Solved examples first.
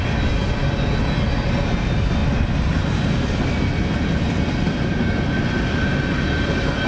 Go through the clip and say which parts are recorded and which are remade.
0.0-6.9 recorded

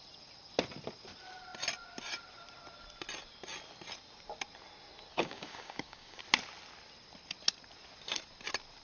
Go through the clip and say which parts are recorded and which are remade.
0.0-5.1 recorded; 5.1-6.2 remade; 6.2-8.8 recorded

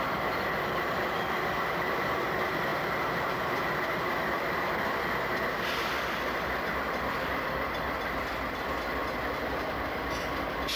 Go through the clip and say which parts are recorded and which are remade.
0.0-10.8 remade

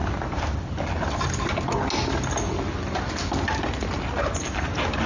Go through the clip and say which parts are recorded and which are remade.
0.0-5.1 recorded

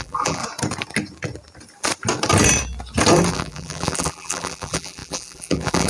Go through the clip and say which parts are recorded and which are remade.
0.0-0.4 remade; 0.4-3.3 recorded; 3.3-5.9 remade

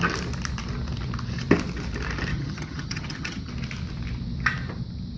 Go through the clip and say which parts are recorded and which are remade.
0.0-2.3 recorded; 2.3-3.5 remade; 3.5-5.2 recorded

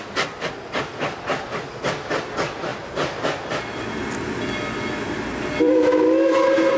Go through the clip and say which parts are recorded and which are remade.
0.0-6.8 recorded